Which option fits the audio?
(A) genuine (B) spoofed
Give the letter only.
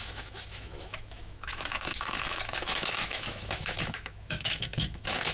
B